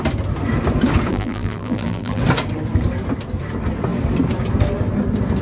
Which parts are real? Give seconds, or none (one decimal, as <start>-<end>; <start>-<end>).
0.0-1.1; 2.2-5.4